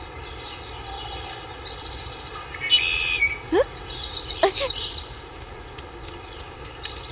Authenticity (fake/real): real